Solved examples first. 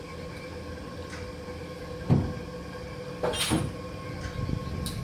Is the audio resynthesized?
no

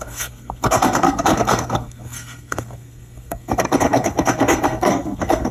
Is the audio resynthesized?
yes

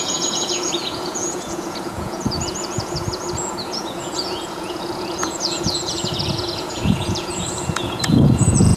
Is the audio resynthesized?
yes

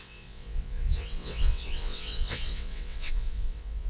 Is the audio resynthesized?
yes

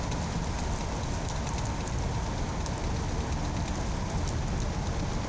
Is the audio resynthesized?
no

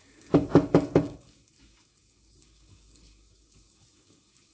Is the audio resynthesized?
yes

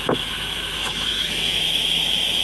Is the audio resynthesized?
yes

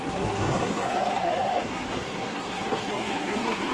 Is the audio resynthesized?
yes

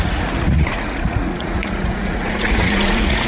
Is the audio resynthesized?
yes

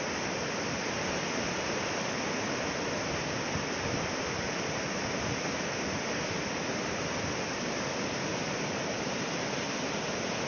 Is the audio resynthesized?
no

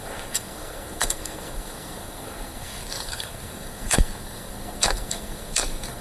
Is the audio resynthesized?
yes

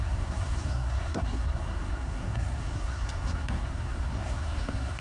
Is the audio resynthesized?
yes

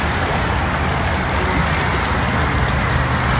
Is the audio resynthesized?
no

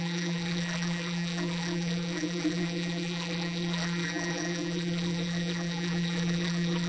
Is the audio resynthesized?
yes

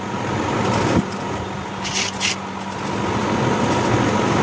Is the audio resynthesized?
no